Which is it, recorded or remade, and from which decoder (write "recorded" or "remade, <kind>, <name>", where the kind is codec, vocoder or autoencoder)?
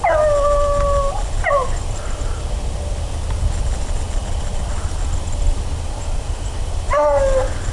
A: recorded